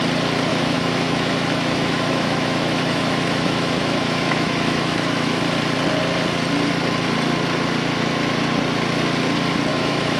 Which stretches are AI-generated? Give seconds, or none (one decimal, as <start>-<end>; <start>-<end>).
0.5-5.4; 9.7-10.2